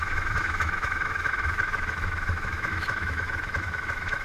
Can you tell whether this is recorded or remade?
remade